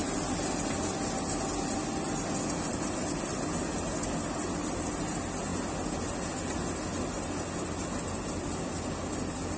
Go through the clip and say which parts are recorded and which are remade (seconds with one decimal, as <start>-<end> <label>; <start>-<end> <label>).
0.0-9.6 recorded